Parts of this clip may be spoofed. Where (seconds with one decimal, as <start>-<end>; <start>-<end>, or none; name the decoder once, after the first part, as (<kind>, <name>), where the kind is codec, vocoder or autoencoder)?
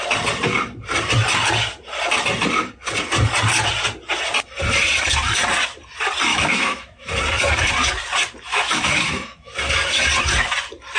6.3-7.1 (autoencoder, DAC-VAE); 8.5-9.5